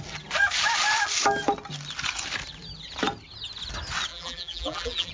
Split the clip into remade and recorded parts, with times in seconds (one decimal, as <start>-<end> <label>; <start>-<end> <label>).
0.0-4.1 recorded; 4.1-5.1 remade